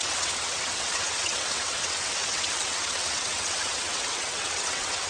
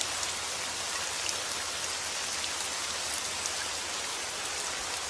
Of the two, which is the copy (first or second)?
first